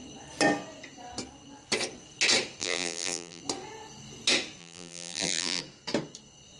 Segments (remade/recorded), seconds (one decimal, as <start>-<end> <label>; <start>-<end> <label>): 0.0-2.6 recorded; 2.6-3.4 remade; 3.4-4.6 recorded; 4.6-5.6 remade; 5.6-6.6 recorded